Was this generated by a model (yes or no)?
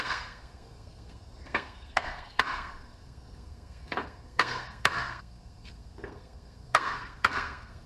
yes